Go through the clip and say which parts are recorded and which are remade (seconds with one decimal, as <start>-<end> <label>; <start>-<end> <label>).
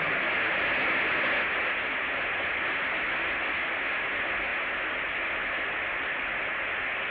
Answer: 0.0-7.1 recorded